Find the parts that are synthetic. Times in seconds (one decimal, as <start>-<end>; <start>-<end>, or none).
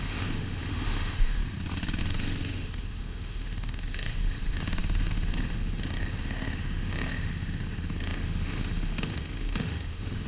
0.0-1.4; 2.0-10.3